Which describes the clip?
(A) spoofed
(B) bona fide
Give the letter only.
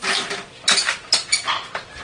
B